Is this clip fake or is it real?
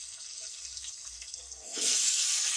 fake